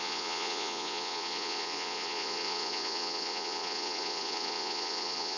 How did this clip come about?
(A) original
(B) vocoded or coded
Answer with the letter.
B